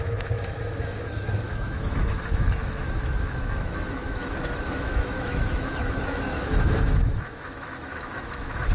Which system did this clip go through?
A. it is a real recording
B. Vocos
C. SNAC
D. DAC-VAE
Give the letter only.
D